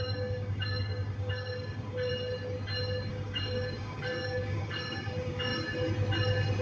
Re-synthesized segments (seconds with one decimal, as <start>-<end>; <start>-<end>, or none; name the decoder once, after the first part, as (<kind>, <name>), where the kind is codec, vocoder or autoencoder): 0.0-2.1 (codec, DAC); 3.1-5.5